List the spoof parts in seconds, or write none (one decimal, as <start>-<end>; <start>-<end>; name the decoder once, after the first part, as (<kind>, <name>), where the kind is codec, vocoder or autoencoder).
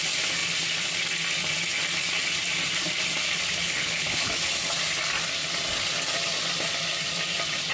3.6-4.3 (codec, HILCodec)